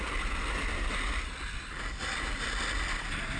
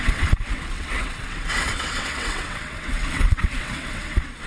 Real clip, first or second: first